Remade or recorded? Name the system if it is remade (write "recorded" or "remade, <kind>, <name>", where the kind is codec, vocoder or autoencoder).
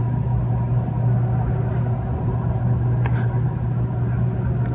recorded